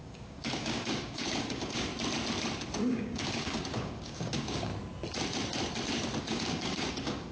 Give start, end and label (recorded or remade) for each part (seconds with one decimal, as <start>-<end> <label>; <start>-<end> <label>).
0.0-1.9 remade; 1.9-2.7 recorded; 2.7-4.7 remade; 4.7-6.2 recorded; 6.2-7.3 remade

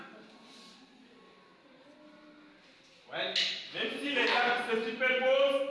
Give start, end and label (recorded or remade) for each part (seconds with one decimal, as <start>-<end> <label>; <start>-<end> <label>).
0.0-5.7 recorded

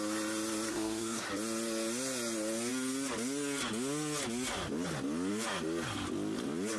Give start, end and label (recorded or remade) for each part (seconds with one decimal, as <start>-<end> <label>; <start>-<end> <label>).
0.0-0.7 recorded; 0.7-1.3 remade; 1.3-6.8 recorded

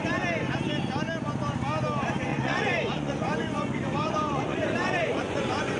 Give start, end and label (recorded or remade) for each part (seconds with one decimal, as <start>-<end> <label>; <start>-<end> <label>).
0.0-2.3 recorded; 2.3-5.8 remade

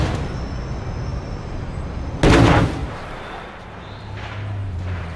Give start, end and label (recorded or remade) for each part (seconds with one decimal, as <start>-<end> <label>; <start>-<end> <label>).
0.0-1.1 recorded; 1.1-1.9 remade; 1.9-2.8 recorded; 2.8-3.8 remade; 3.8-4.6 recorded; 4.6-5.2 remade

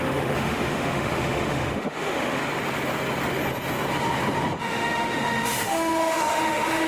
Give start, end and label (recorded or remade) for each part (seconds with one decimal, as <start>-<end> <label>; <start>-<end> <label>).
0.0-2.4 remade; 2.4-4.6 recorded; 4.6-6.9 remade

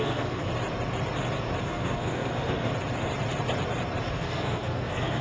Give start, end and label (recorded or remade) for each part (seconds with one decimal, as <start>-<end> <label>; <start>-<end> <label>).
0.0-0.5 remade; 0.5-1.6 recorded; 1.6-2.7 remade; 2.7-4.1 recorded; 4.1-5.2 remade

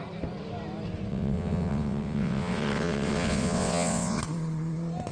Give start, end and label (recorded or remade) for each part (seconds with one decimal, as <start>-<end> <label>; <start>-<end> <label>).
0.0-1.1 recorded; 1.1-4.2 remade; 4.2-5.1 recorded